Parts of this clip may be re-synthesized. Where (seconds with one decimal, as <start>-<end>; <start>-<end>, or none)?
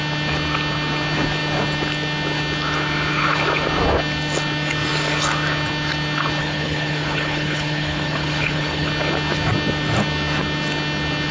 6.4-8.9